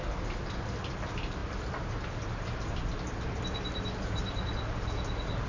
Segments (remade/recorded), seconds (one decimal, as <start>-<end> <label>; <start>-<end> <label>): 0.0-5.5 recorded